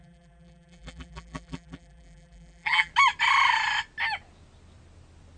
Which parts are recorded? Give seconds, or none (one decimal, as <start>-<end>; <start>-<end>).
2.9-5.4